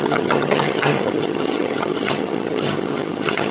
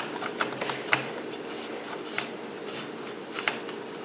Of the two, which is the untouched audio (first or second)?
second